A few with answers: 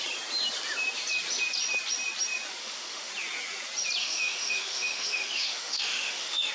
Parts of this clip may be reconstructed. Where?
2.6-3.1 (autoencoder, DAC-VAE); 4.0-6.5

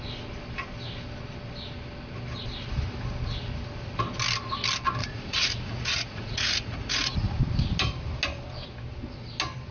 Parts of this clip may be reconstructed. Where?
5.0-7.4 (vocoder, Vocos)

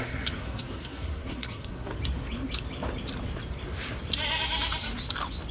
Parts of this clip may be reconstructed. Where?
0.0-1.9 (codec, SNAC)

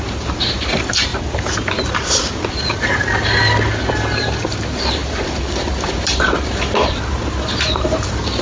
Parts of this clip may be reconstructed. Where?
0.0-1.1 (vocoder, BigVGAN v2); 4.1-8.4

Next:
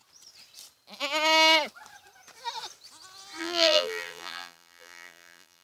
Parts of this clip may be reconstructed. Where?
3.4-5.6 (vocoder, BigVGAN v2)